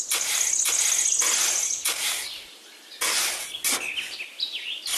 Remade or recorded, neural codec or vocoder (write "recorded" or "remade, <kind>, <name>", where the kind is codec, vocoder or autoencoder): recorded